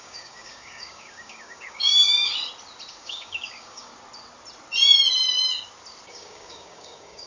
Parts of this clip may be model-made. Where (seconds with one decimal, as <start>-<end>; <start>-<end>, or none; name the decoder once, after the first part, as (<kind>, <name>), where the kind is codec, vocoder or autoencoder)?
0.0-2.3 (codec, DAC); 2.9-3.9; 6.1-7.3